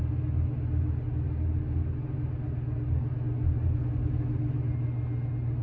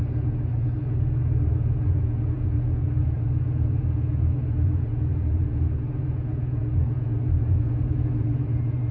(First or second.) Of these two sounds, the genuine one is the first